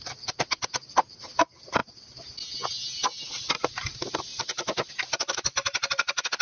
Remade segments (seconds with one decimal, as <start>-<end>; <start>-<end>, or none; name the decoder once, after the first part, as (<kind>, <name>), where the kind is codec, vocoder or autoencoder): none